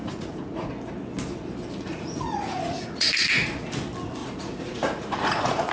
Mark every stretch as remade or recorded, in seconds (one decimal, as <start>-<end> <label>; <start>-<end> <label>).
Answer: 0.0-0.7 remade; 0.7-1.9 recorded; 1.9-3.5 remade; 3.5-4.2 recorded; 4.2-5.7 remade